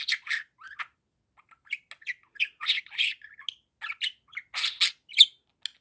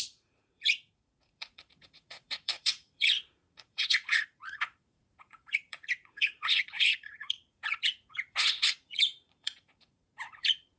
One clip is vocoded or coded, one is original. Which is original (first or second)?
first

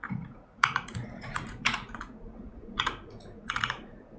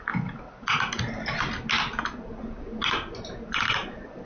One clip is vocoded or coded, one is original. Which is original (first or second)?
second